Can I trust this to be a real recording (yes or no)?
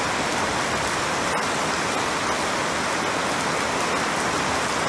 yes